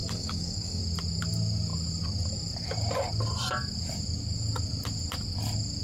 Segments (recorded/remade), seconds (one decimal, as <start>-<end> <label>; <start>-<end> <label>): 0.0-0.8 remade; 0.8-5.8 recorded